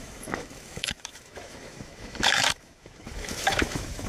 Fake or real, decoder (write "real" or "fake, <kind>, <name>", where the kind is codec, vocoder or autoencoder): fake, autoencoder, DAC-VAE